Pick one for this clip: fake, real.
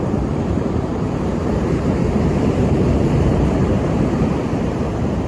fake